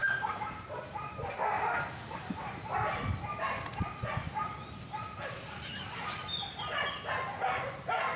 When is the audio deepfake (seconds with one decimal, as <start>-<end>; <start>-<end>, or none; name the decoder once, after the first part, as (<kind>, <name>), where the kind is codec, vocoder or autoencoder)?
none